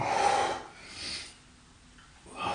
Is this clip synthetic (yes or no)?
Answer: no